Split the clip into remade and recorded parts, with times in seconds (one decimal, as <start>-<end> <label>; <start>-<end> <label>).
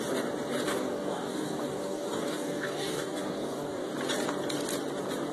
0.0-0.7 recorded; 0.7-3.9 remade; 3.9-5.3 recorded